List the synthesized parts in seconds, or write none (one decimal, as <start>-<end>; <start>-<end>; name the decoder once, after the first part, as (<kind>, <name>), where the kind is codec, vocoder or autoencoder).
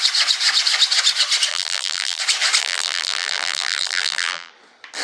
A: 1.5-2.2 (vocoder, BigVGAN v2); 2.6-4.5